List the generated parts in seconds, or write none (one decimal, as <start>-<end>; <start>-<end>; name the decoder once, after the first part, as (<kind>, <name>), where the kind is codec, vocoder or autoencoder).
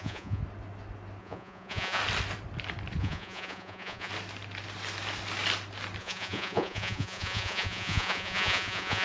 0.0-0.4 (vocoder, Vocos); 1.2-2.0; 3.0-4.1; 6.0-9.0